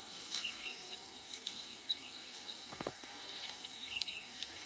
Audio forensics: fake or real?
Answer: fake